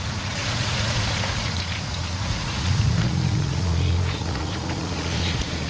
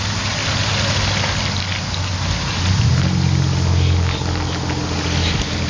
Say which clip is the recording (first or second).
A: second